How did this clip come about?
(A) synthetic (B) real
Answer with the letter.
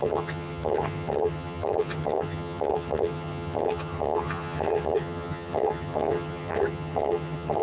A